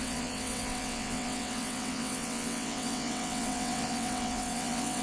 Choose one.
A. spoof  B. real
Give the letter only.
A